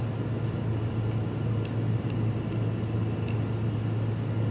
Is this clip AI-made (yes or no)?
no